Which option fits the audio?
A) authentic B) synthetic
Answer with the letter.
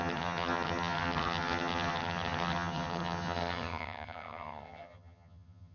B